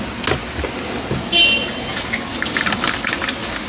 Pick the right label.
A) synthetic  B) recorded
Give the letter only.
B